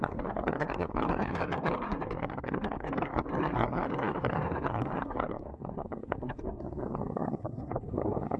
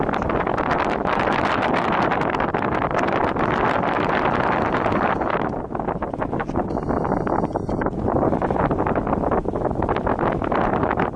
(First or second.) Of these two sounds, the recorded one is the second